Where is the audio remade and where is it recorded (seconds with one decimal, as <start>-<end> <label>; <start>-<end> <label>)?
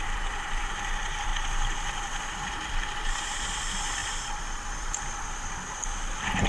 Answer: 0.0-1.3 remade; 1.3-2.4 recorded; 2.4-6.5 remade